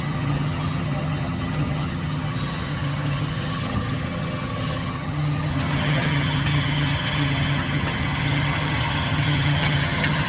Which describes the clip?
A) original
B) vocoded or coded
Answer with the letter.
B